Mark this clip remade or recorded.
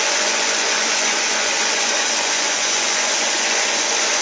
remade